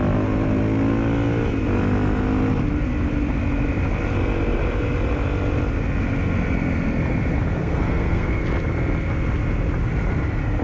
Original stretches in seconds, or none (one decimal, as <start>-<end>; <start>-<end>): 0.0-7.6; 8.4-10.6